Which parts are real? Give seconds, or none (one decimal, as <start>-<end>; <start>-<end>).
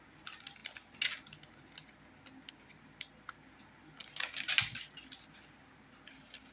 0.0-6.5